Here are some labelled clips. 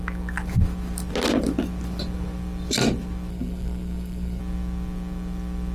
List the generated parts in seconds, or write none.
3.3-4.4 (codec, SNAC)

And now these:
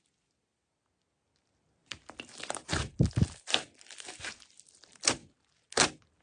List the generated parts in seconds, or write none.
none

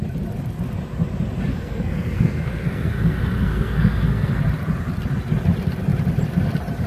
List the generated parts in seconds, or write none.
1.5-4.4 (codec, SNAC)

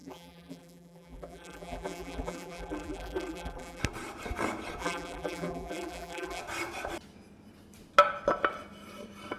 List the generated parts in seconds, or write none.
0.0-3.8 (vocoder, BigVGAN v2); 4.8-6.4

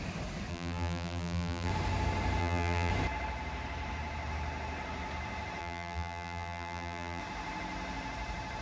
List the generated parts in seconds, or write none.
0.5-1.7 (vocoder, BigVGAN v2); 2.4-2.9; 5.6-7.2